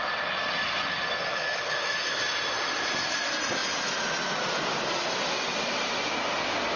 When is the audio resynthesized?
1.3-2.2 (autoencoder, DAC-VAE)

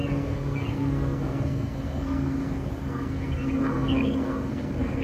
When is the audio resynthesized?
0.0-5.0 (codec, SNAC)

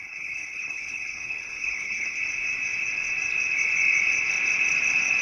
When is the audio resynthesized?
0.0-2.2 (codec, HILCodec)

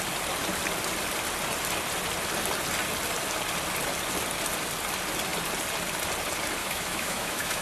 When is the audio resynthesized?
6.6-7.6 (autoencoder, DAC-VAE)

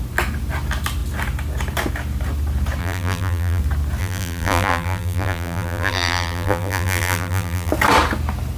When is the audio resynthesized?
2.8-3.6 (vocoder, BigVGAN v2); 4.0-7.7

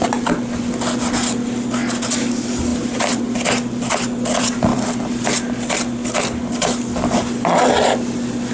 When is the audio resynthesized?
none

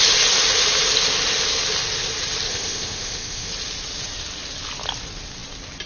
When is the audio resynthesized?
2.5-3.5 (codec, ZipCodec)

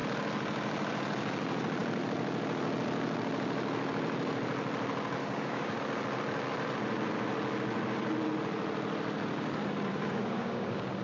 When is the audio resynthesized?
5.2-5.8 (codec, DAC); 9.9-11.0